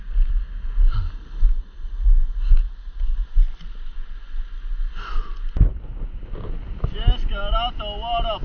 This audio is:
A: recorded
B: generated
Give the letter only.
A